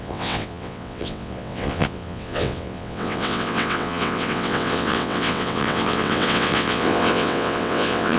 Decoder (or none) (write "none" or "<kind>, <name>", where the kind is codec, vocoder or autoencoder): vocoder, WaveNeXt